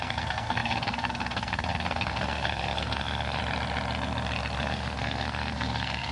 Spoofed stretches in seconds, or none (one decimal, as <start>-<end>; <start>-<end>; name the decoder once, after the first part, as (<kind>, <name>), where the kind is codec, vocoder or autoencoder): 0.0-3.4 (codec, SNAC); 4.6-6.1